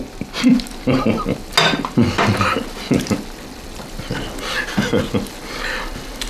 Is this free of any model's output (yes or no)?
yes